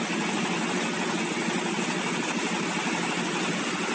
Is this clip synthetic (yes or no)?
no